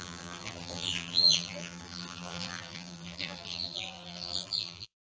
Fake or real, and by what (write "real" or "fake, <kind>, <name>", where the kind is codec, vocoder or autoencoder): fake, vocoder, BigVGAN v2